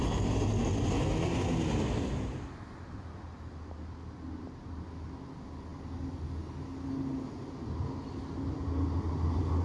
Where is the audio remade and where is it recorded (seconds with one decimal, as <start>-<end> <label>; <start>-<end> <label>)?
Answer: 0.0-9.6 recorded